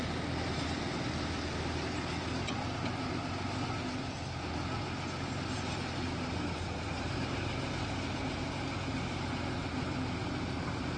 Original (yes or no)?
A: yes